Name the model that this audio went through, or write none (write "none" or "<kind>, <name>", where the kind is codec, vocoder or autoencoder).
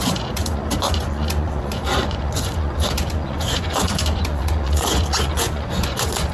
vocoder, Vocos